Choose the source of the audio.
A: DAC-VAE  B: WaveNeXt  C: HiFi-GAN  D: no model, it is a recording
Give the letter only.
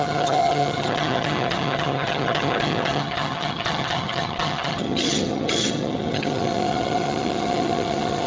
C